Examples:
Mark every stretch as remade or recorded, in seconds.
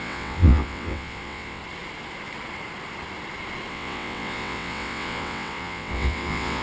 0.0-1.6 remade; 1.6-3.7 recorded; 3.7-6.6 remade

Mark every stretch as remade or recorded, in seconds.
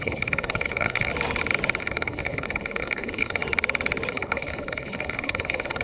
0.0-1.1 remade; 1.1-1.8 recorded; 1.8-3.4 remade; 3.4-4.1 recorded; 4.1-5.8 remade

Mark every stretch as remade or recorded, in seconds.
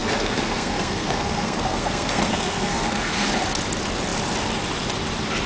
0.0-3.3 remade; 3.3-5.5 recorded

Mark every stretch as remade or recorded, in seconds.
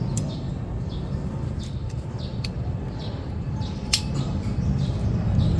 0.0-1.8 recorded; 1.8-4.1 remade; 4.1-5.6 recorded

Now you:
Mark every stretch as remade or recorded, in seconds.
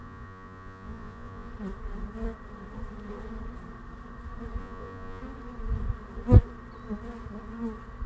0.0-1.5 remade; 1.5-4.6 recorded; 4.6-5.2 remade; 5.2-8.1 recorded